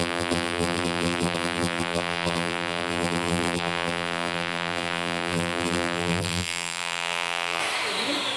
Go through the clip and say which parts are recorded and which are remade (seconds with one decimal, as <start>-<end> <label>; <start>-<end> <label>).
0.0-7.6 remade; 7.6-8.4 recorded